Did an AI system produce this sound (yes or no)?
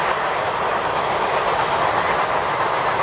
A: no